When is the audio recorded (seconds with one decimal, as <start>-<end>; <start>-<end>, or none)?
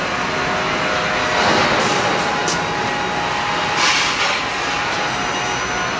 0.0-6.0